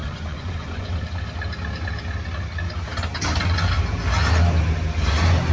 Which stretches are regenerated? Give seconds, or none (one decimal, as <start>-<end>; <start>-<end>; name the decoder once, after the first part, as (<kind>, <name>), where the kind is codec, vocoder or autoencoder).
0.0-0.9 (vocoder, Vocos)